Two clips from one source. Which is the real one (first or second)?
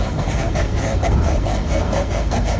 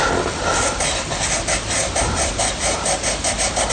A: second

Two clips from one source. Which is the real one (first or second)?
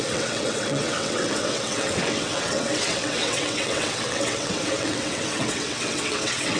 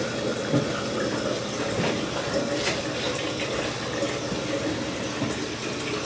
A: second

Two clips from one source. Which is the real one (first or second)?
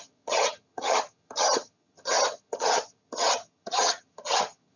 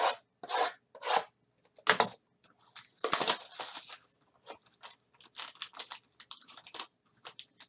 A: second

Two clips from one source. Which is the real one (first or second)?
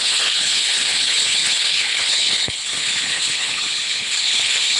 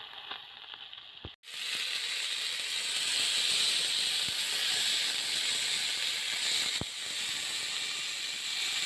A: second